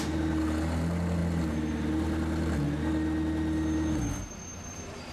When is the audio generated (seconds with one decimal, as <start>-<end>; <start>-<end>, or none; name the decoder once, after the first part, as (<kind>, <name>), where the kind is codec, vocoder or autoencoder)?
none